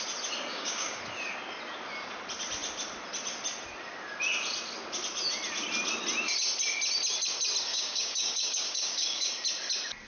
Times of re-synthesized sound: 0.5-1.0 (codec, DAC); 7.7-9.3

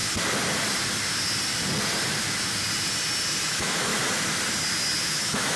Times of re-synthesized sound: 3.4-3.9 (autoencoder, DAC-VAE); 5.1-5.6

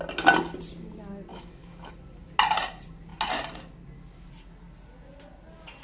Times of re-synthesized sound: 1.3-1.9 (autoencoder, DAC-VAE)

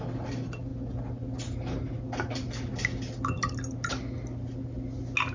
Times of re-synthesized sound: none

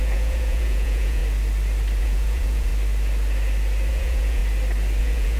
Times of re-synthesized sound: 0.0-1.2 (vocoder, Vocos); 2.0-2.7; 3.9-4.4; 5.0-5.4

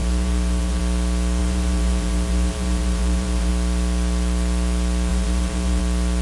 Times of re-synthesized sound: 0.0-0.8 (vocoder, BigVGAN v2); 1.4-3.5; 5.1-5.8